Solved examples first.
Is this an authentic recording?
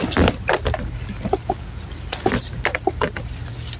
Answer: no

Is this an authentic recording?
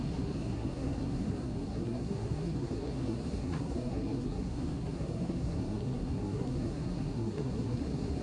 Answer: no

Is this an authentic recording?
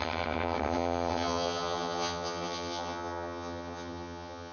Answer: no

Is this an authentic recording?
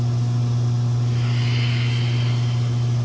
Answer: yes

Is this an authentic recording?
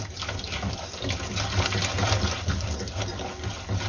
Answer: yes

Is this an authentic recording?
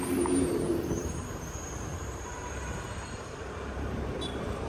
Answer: no